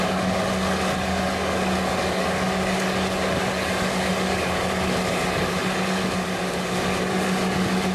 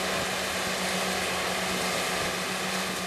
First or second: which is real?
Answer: second